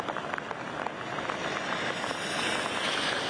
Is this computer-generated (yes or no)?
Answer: no